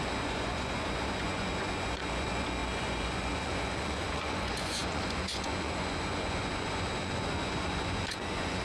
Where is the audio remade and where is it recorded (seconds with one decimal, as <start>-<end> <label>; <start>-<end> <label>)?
0.0-8.6 remade